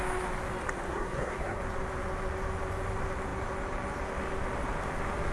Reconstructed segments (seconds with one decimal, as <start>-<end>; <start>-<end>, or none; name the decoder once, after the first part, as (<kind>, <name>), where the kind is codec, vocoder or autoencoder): 0.9-1.6 (codec, SNAC)